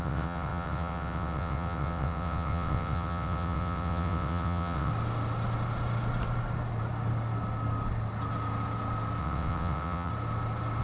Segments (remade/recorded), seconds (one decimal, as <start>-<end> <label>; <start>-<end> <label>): 0.0-4.9 remade; 4.9-9.2 recorded; 9.2-10.1 remade; 10.1-10.8 recorded